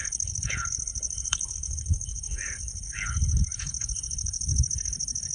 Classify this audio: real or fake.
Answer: fake